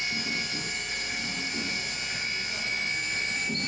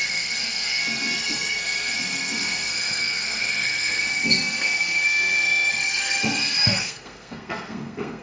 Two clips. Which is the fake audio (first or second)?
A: second